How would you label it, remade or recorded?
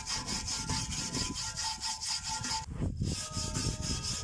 recorded